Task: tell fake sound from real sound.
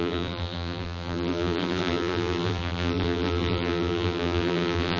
fake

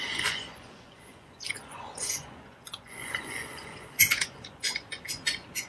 fake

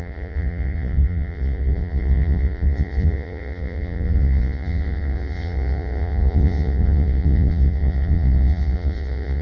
fake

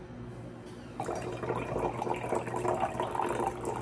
real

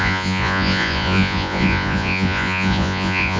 fake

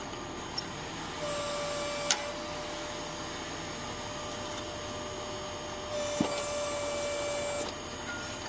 real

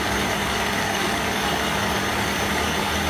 fake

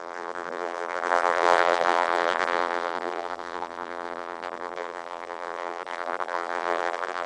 fake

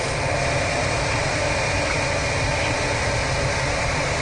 real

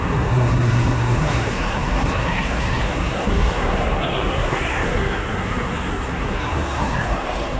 fake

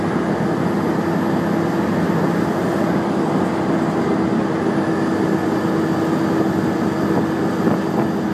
real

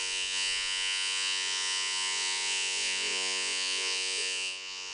fake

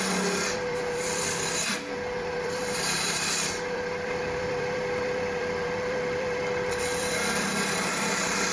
fake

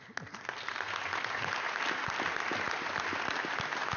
real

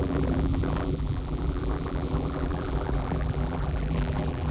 fake